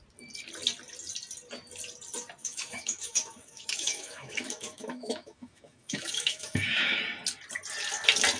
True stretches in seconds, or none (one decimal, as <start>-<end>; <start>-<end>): 0.0-2.4; 7.0-8.4